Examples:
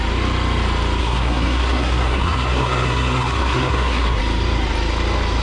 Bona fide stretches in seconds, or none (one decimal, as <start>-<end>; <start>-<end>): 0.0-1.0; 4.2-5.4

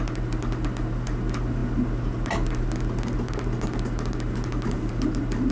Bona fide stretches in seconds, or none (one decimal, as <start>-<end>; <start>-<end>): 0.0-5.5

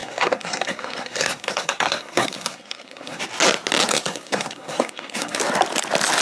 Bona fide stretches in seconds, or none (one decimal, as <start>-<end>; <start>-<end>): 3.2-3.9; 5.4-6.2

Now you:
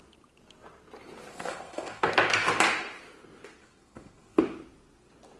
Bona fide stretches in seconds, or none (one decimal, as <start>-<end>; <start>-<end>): 0.0-1.3; 2.1-3.6; 4.4-5.4